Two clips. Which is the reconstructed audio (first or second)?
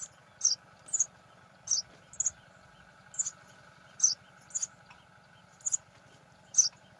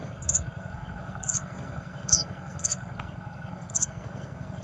second